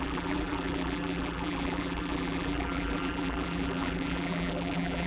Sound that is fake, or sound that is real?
fake